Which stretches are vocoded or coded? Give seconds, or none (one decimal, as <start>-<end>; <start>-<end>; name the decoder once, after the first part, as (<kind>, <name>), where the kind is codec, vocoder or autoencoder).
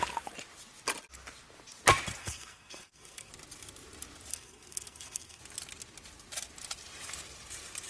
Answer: 2.2-3.3 (codec, SNAC); 4.3-5.4